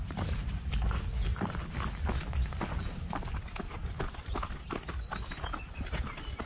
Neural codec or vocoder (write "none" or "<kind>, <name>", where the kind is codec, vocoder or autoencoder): none